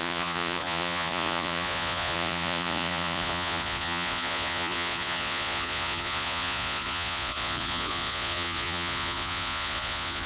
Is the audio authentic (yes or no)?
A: no